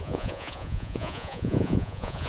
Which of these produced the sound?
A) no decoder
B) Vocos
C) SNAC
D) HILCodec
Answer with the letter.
B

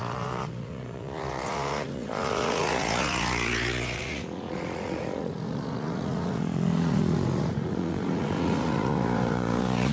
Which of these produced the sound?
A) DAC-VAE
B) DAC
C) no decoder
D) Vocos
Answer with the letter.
D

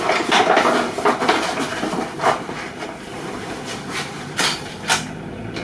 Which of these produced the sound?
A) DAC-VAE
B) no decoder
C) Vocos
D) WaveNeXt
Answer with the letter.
B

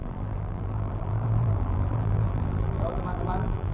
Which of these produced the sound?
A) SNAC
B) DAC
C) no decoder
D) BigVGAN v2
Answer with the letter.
D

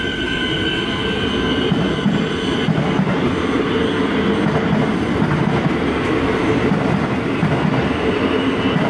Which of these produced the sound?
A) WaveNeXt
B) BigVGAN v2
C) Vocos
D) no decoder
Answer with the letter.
D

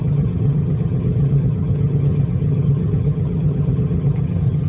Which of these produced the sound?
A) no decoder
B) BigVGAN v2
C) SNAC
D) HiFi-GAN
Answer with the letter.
D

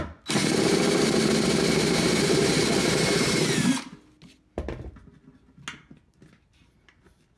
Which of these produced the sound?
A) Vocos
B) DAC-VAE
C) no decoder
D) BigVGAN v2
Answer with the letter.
C